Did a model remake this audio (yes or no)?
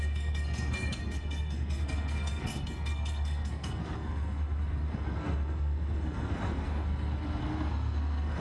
yes